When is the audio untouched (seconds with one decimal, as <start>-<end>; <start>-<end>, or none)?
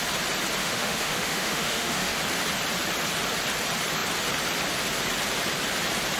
0.0-0.6; 2.2-6.2